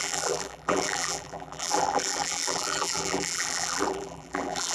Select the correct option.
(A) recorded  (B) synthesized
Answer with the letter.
B